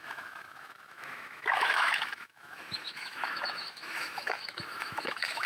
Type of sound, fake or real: fake